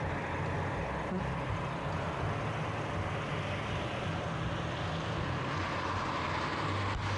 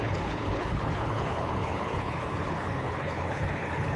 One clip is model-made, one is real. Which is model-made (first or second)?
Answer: second